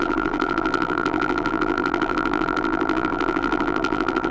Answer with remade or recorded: remade